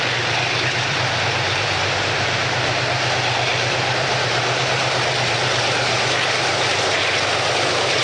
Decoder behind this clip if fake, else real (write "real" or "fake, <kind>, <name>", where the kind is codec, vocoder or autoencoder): fake, vocoder, BigVGAN v2